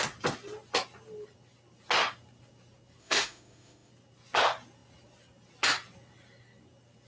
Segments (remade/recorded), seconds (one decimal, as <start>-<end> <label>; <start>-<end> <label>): 0.0-3.0 recorded; 3.0-3.9 remade; 3.9-7.1 recorded